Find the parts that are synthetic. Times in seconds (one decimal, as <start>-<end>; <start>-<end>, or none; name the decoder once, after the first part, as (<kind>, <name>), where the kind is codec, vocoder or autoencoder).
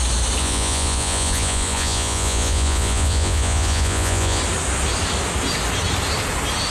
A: 0.4-4.4 (vocoder, Vocos)